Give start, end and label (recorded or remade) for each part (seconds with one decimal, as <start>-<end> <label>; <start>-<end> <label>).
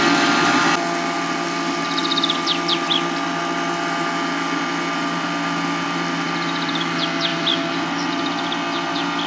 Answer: 0.0-9.3 recorded